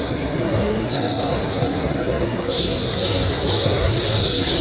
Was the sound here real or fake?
fake